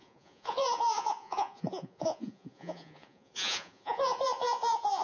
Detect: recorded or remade remade